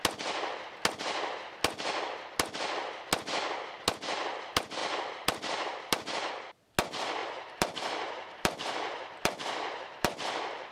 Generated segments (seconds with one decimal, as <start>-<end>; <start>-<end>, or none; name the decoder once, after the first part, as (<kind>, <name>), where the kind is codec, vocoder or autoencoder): 4.8-6.3 (vocoder, BigVGAN v2); 7.2-10.7

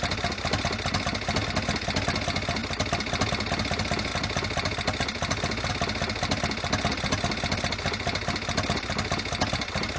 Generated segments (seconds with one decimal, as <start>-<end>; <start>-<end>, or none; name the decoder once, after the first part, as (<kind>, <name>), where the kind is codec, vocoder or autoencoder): none

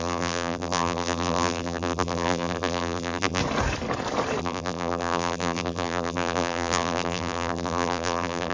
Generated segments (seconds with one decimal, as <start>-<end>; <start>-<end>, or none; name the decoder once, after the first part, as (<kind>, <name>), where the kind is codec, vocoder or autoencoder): 0.0-3.4 (vocoder, BigVGAN v2); 4.4-8.5

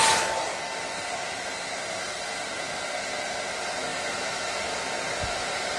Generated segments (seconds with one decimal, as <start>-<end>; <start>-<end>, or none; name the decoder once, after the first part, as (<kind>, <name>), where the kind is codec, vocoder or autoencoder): none

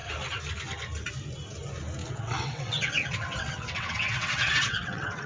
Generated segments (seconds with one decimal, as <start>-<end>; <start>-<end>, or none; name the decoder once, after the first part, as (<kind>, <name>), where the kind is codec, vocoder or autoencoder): 2.0-5.3 (vocoder, WaveNeXt)

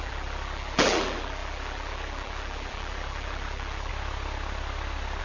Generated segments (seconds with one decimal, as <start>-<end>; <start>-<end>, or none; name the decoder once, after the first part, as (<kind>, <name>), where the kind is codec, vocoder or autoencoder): 0.0-3.9 (vocoder, BigVGAN v2)

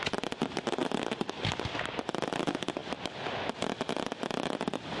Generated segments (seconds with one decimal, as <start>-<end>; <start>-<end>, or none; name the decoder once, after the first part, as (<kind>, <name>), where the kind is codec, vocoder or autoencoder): none

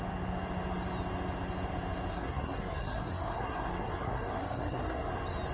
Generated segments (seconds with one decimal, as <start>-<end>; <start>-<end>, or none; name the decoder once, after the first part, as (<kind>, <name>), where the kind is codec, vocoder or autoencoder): 2.1-5.1 (codec, SNAC)